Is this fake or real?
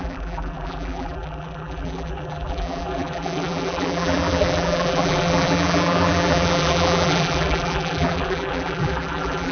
fake